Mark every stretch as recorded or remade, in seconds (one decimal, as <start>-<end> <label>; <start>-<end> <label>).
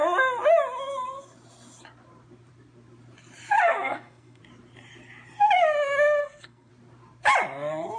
0.0-3.6 recorded; 3.6-4.4 remade; 4.4-6.2 recorded; 6.2-6.7 remade; 6.7-8.0 recorded